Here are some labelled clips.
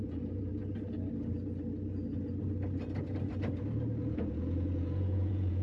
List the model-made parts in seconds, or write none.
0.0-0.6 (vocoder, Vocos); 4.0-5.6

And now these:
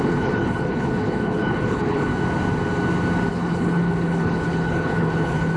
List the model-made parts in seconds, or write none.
0.0-2.1 (codec, HILCodec); 3.3-5.6

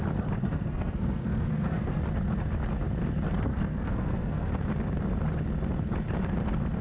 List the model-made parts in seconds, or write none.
0.4-2.0 (codec, SNAC); 3.5-4.5

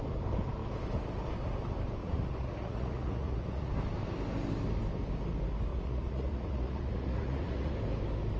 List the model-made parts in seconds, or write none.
2.0-3.7 (vocoder, Vocos); 5.7-7.8

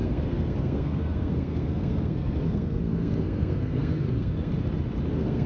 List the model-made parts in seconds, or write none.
0.0-4.5 (codec, SNAC); 5.1-5.5